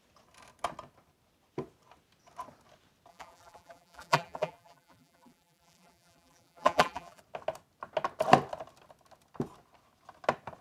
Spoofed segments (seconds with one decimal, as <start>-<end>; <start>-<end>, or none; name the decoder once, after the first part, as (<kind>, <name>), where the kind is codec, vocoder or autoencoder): 3.1-7.2 (vocoder, BigVGAN v2)